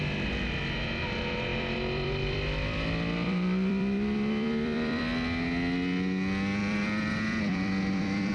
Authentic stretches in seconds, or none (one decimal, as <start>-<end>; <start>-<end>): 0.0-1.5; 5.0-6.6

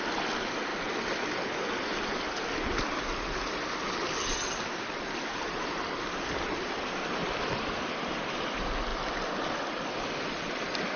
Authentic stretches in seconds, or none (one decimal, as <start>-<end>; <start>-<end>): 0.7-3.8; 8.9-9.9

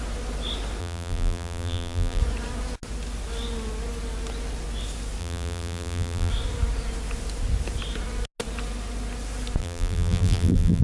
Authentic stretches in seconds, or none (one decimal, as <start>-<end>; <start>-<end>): 0.0-0.8; 2.2-5.2; 6.3-9.6

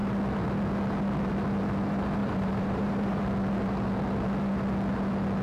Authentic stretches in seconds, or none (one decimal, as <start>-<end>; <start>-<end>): 0.0-2.2; 3.2-5.4

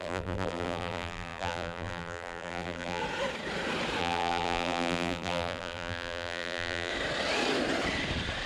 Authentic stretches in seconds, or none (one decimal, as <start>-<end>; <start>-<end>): 3.0-4.0; 6.9-8.5

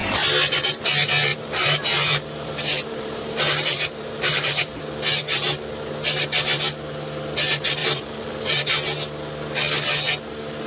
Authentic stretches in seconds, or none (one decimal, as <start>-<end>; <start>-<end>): 0.0-1.3; 4.8-7.8; 8.6-10.7